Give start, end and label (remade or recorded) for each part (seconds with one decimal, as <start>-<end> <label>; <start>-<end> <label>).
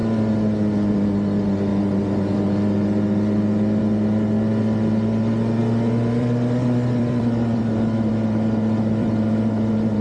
0.0-1.7 remade; 1.7-3.8 recorded; 3.8-4.5 remade; 4.5-5.6 recorded; 5.6-10.0 remade